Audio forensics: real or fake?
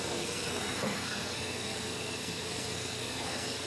fake